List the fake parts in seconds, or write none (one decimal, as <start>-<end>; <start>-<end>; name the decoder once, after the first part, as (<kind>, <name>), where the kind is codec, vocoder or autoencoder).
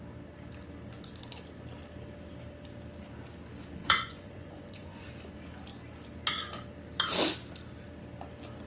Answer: 3.8-5.1 (vocoder, Vocos)